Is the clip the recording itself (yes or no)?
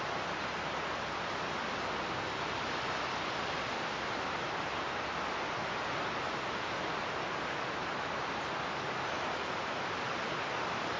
yes